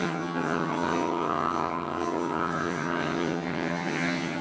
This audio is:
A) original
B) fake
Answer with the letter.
B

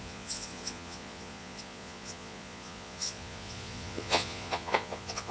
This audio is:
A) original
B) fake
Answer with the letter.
B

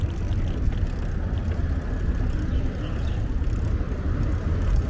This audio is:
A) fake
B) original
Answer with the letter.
B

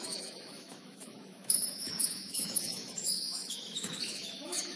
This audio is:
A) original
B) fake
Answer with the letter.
B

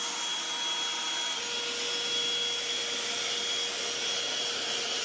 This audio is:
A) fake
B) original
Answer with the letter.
B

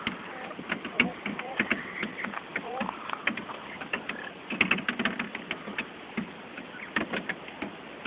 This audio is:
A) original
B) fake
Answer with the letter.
A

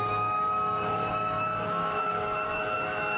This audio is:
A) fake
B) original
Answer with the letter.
A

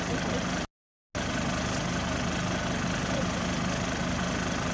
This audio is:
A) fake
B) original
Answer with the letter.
B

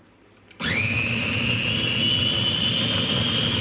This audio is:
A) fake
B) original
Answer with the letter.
B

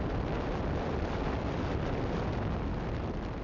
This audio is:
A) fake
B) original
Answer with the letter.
B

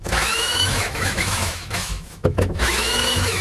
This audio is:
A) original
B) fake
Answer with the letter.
B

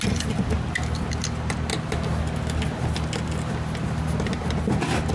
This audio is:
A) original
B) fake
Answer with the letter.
A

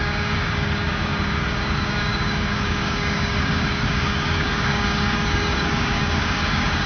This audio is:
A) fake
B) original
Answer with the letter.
A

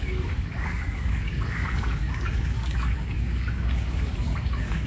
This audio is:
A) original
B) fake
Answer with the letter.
B